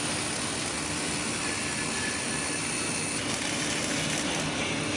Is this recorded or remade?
recorded